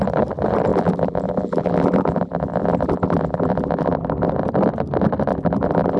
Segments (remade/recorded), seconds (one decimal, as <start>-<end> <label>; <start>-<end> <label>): 0.0-0.7 recorded; 0.7-4.3 remade; 4.3-5.3 recorded; 5.3-6.0 remade